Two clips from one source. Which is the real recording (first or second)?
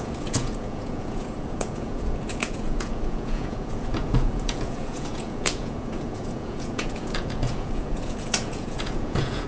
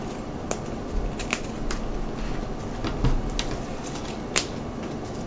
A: second